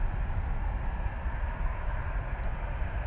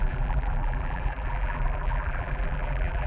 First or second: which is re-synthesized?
second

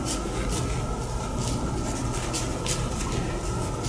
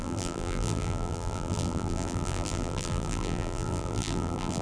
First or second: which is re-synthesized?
second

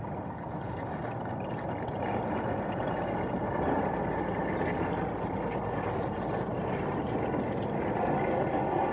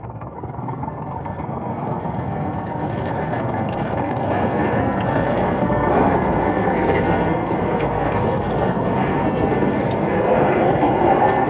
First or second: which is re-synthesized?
second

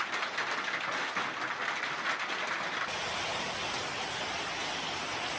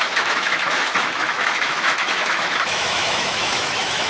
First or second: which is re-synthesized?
second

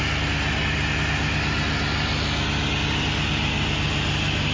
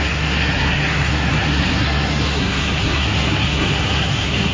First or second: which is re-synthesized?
second